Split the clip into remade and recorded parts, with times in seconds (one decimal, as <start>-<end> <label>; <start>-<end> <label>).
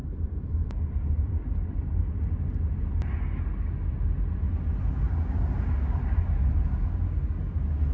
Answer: 0.0-1.8 remade; 1.8-7.9 recorded